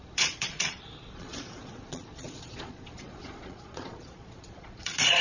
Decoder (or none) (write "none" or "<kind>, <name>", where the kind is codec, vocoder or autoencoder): vocoder, Vocos